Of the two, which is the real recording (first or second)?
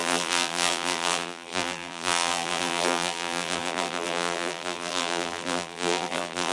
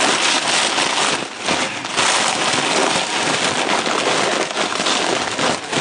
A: second